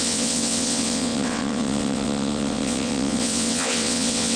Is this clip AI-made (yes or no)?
yes